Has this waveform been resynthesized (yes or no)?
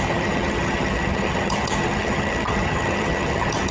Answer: yes